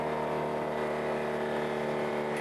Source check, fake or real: real